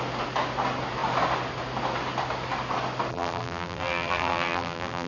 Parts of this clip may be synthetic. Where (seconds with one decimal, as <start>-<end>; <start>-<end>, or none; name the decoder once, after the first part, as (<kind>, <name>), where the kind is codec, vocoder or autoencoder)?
3.1-5.1 (vocoder, BigVGAN v2)